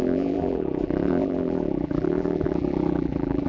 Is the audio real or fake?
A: fake